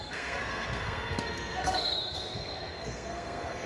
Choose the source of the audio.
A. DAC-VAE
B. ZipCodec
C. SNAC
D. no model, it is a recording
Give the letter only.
C